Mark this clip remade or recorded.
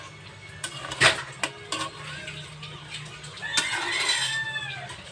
recorded